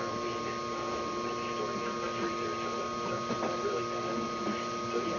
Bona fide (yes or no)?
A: yes